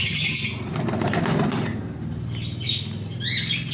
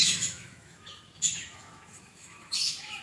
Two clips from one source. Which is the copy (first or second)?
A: second